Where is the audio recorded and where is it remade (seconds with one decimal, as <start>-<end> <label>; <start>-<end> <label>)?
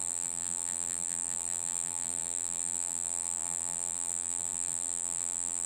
0.0-5.7 remade